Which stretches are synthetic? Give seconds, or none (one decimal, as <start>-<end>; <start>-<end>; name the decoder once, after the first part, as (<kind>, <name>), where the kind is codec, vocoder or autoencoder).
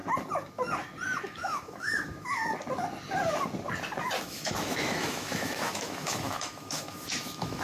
1.2-2.4 (autoencoder, DAC-VAE); 4.2-7.6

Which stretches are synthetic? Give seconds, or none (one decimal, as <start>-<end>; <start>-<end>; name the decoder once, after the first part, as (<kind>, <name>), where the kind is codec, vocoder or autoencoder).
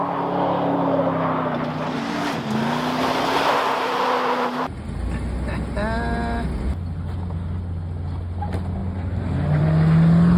none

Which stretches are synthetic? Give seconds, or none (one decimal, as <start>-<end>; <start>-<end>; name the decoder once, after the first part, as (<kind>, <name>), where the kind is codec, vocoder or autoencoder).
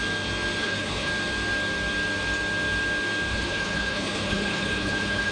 0.6-1.1 (codec, HILCodec); 3.3-5.3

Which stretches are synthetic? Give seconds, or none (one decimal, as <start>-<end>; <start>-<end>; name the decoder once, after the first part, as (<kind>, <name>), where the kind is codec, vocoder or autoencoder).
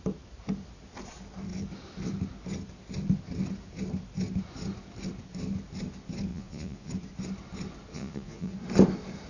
6.3-6.9 (vocoder, Vocos); 7.9-8.5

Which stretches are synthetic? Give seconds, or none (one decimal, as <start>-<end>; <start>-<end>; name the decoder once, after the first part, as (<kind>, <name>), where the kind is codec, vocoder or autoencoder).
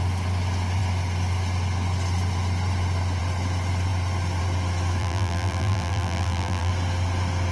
5.0-6.7 (vocoder, BigVGAN v2)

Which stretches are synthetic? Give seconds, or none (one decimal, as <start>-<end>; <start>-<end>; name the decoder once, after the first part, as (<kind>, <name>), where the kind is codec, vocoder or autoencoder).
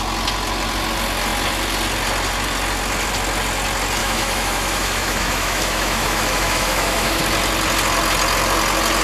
4.0-7.2 (autoencoder, DAC-VAE)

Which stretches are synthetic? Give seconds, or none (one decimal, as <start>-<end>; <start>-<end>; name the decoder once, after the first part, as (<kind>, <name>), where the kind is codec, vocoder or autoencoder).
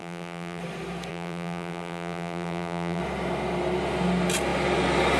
0.0-0.6 (vocoder, BigVGAN v2); 1.1-3.0